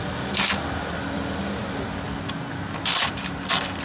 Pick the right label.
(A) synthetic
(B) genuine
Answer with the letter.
B